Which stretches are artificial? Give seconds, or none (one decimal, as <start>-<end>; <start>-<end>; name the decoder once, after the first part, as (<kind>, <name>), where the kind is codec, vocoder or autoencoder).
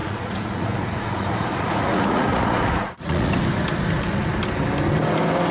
0.0-3.3 (vocoder, Vocos)